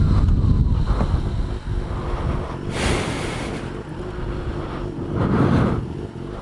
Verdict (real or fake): real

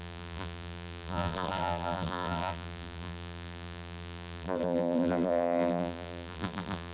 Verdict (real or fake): fake